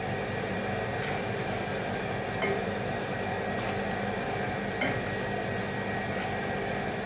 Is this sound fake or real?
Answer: real